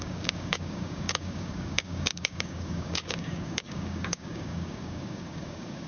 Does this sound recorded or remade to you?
remade